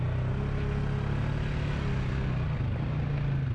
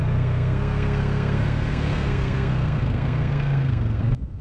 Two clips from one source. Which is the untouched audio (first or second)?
first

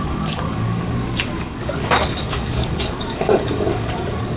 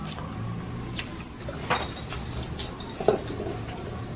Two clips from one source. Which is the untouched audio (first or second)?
second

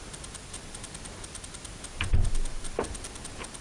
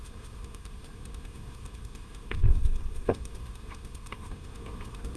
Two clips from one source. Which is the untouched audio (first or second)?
first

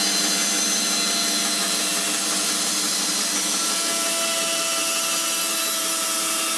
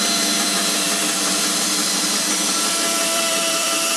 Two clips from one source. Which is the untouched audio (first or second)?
first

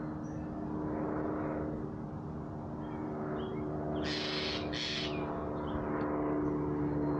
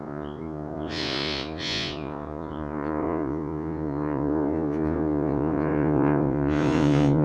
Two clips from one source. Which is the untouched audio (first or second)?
first